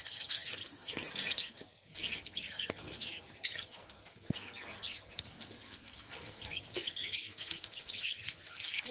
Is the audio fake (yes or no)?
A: yes